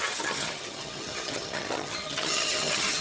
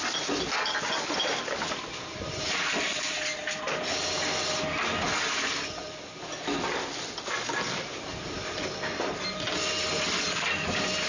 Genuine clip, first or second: second